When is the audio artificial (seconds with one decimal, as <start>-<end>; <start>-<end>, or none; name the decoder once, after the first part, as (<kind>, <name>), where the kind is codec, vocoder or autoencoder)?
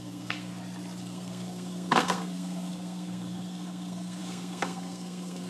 0.0-0.5 (codec, SNAC); 1.0-5.5